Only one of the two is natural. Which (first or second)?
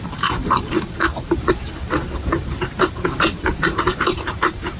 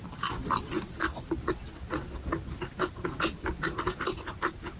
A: second